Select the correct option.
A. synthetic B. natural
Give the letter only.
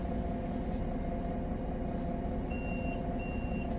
B